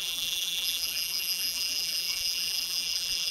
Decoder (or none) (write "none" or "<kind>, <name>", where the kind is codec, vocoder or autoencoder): vocoder, BigVGAN v2